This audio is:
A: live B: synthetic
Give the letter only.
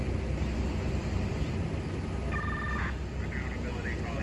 A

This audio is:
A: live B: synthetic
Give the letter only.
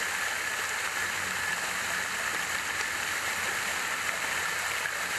A